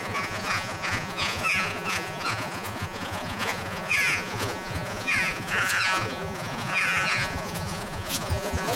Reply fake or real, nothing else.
fake